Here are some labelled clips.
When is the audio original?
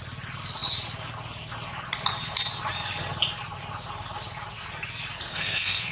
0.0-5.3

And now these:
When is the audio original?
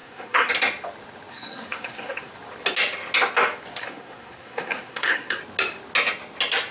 0.5-1.3; 2.3-3.8; 5.4-6.7